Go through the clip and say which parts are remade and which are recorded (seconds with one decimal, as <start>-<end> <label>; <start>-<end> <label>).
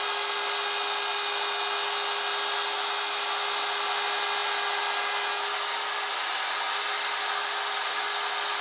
0.0-8.6 recorded